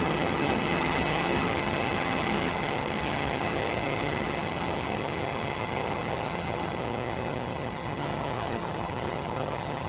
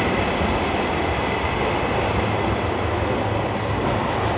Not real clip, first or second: first